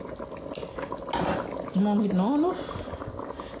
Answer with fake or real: real